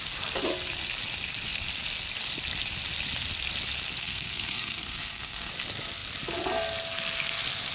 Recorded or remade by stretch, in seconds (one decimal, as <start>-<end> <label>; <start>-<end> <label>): 0.0-4.0 recorded; 4.0-5.5 remade; 5.5-7.7 recorded